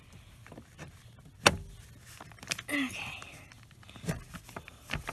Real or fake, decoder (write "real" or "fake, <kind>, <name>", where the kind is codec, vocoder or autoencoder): real